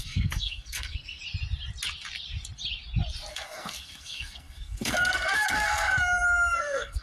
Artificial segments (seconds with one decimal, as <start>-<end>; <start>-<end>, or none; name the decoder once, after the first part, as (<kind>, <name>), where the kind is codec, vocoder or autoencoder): 0.0-1.2 (codec, SNAC); 3.3-7.0